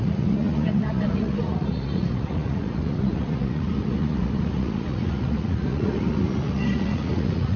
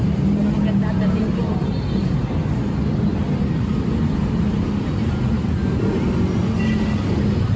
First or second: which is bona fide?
second